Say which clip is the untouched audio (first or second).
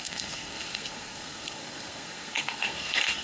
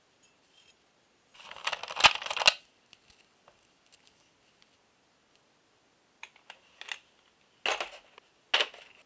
second